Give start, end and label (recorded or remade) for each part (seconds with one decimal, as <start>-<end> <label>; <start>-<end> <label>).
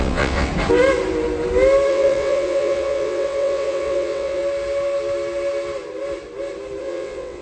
0.0-0.5 remade; 0.5-1.9 recorded; 1.9-4.4 remade; 4.4-6.8 recorded; 6.8-7.4 remade